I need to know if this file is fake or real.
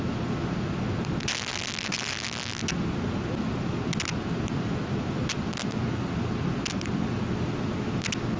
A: real